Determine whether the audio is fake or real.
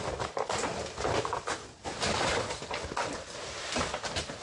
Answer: real